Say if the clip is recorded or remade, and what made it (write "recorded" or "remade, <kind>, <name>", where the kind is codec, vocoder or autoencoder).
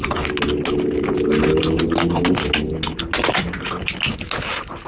recorded